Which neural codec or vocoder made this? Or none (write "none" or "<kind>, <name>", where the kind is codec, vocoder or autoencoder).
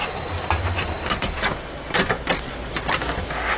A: none